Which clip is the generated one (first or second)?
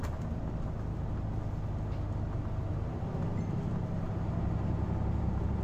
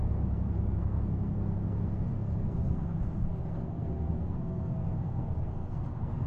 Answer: second